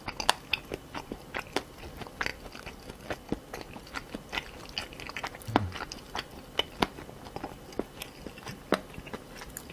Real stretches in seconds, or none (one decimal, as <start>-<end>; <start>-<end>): 0.0-9.7